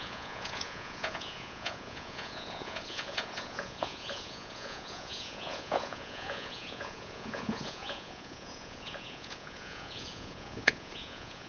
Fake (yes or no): yes